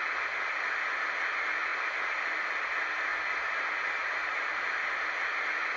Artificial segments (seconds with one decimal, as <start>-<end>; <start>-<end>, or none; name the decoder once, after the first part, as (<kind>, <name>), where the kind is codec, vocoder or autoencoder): none